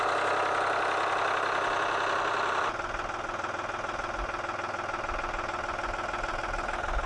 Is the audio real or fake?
real